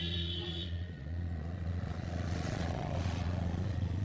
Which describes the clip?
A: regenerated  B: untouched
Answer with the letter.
A